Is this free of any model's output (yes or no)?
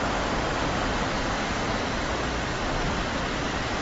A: yes